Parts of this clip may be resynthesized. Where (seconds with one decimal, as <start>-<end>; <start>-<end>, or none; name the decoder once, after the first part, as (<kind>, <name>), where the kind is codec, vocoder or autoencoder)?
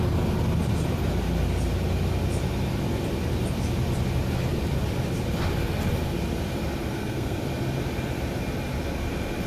6.9-7.4 (codec, SNAC)